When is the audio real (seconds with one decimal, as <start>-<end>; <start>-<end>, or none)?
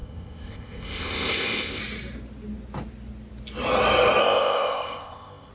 1.8-4.2